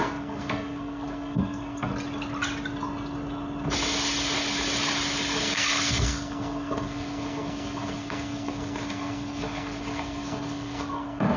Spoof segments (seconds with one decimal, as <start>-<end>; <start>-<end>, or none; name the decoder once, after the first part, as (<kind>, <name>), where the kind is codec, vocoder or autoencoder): 0.0-1.9 (codec, SNAC); 5.4-11.4